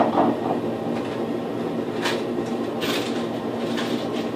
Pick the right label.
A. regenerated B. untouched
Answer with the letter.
B